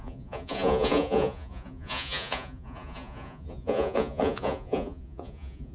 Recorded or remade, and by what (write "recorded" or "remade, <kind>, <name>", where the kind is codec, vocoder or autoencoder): remade, vocoder, Vocos